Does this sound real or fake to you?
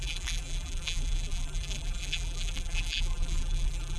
fake